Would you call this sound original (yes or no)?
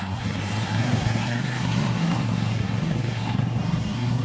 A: no